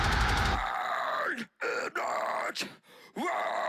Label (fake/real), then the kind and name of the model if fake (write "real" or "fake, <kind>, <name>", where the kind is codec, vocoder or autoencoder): real